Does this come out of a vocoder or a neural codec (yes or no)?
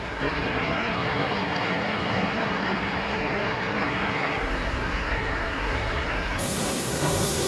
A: yes